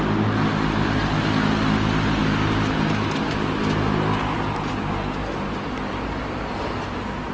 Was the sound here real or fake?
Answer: real